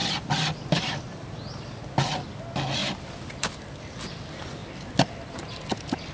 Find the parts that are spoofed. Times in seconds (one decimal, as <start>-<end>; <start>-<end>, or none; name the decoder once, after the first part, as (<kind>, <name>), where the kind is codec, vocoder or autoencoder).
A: 0.0-1.3 (vocoder, BigVGAN v2); 2.8-3.9; 4.6-5.1